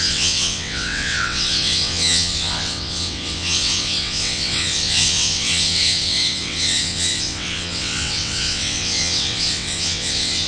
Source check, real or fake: fake